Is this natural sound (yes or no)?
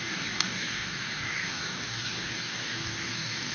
no